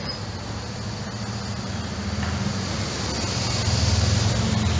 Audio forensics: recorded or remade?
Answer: recorded